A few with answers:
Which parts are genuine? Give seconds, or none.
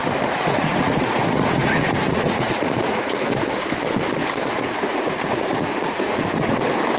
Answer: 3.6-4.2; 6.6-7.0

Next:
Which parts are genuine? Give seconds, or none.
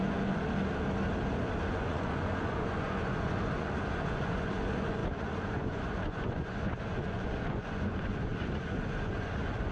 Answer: 0.4-1.7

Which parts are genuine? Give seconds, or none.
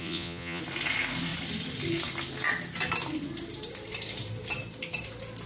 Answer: 0.6-5.5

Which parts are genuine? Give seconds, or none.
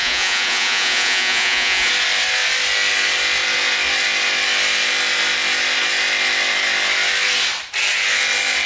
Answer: 1.9-8.7